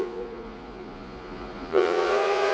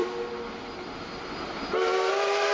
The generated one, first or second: first